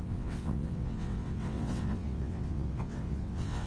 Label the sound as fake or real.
fake